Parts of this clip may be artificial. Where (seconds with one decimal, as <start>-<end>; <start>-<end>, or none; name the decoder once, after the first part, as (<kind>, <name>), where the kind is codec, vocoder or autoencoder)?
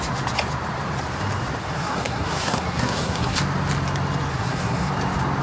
1.6-3.4 (codec, SNAC); 4.3-4.9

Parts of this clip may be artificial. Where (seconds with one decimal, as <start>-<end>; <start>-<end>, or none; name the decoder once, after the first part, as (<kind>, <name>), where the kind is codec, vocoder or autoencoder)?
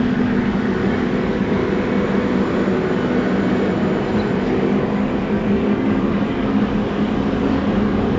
0.0-1.6 (codec, DAC); 4.4-8.2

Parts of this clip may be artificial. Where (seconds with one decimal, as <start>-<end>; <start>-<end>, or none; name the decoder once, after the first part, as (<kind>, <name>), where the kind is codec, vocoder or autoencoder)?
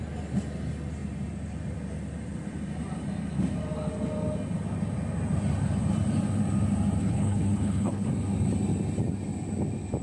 7.0-8.1 (codec, HILCodec)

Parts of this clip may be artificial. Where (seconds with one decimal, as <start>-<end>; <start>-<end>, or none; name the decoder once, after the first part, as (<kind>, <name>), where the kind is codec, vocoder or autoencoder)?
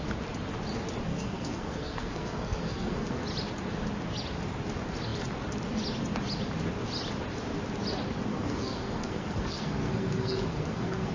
1.1-3.2 (codec, SNAC); 8.3-11.1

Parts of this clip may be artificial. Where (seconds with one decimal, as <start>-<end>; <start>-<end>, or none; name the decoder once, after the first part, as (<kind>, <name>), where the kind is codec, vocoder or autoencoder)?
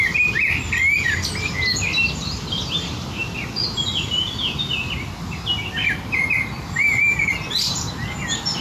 none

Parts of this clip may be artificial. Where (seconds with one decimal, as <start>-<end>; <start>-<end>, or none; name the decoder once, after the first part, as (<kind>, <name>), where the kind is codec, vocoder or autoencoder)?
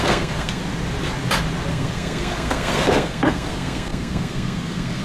0.0-0.6 (codec, SNAC); 1.7-5.0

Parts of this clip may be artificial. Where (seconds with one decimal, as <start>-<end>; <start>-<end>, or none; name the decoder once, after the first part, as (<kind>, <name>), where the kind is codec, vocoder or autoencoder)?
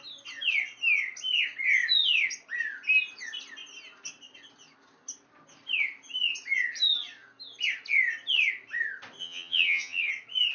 9.2-10.1 (vocoder, HiFi-GAN)